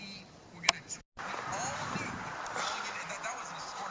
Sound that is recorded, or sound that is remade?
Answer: recorded